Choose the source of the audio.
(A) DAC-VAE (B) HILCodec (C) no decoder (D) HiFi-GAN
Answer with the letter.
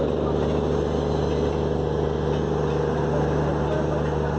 C